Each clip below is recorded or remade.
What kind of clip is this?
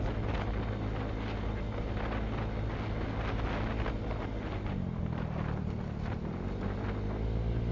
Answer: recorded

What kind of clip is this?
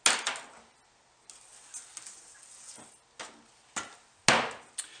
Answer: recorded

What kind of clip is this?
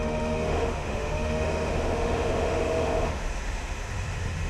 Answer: remade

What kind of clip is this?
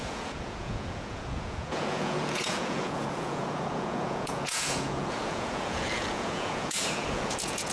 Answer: remade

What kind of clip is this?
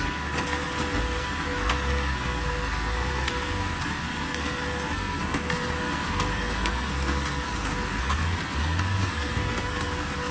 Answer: remade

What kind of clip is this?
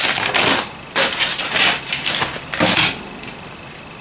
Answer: recorded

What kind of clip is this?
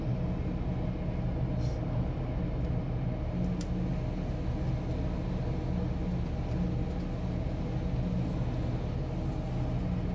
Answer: recorded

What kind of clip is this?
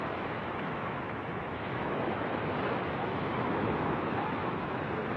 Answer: remade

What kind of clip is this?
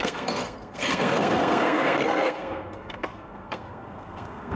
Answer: remade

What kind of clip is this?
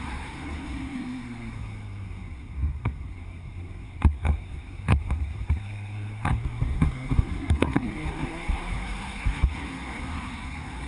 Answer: remade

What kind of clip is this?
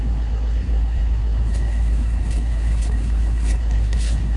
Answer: remade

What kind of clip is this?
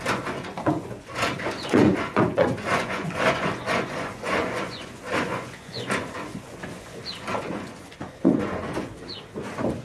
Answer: remade